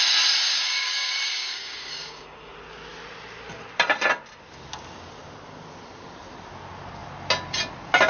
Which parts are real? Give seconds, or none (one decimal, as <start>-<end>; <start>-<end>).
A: 0.0-0.5; 2.5-8.1